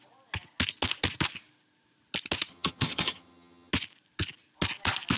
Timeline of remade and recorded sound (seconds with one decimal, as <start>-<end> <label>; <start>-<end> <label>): 0.0-2.5 recorded; 2.5-3.7 remade; 3.7-5.2 recorded